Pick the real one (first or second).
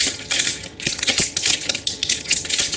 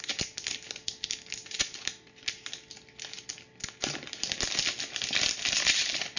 second